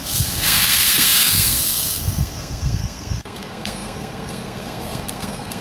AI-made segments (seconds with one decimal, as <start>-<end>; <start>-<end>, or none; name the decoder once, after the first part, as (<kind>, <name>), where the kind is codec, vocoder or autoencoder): 0.0-5.6 (codec, SNAC)